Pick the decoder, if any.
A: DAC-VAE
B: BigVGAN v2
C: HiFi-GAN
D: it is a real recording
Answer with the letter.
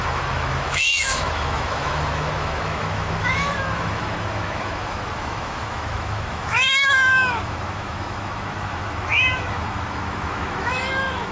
A